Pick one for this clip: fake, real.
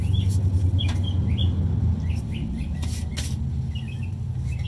real